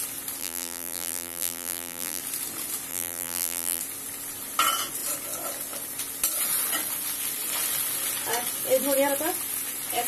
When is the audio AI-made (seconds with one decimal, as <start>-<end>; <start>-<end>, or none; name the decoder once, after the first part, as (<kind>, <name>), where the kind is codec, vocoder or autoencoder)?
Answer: 0.4-2.2 (vocoder, BigVGAN v2); 2.9-3.8